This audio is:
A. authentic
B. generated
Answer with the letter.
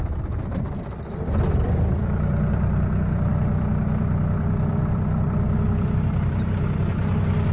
B